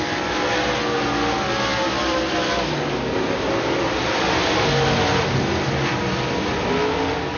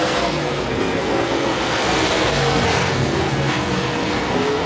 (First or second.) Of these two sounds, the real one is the first